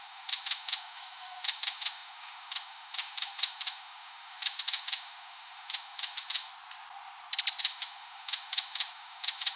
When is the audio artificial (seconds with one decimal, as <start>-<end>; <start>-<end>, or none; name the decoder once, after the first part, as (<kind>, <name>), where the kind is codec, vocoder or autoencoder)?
0.0-6.5 (autoencoder, DAC-VAE); 7.6-9.6